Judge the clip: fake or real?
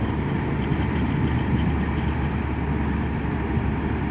real